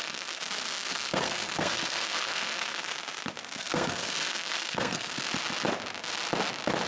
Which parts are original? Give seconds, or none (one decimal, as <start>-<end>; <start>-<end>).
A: 0.4-0.9; 2.9-3.6; 5.3-6.9